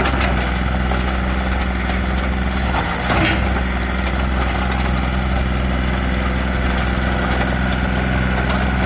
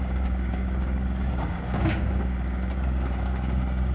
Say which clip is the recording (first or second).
first